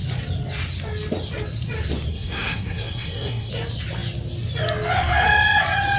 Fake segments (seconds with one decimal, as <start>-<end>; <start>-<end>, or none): 2.1-3.5